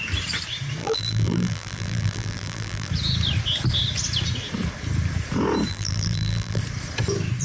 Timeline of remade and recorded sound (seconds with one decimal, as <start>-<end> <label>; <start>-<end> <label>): 0.0-0.8 recorded; 0.8-2.9 remade; 2.9-5.7 recorded; 5.7-6.6 remade; 6.6-7.4 recorded